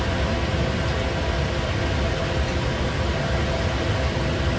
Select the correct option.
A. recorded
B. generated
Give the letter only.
A